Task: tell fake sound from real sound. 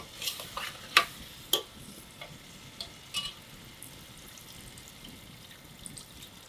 real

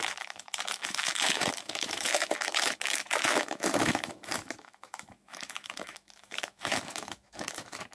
fake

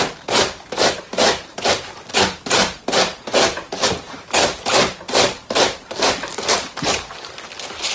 real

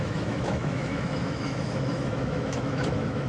fake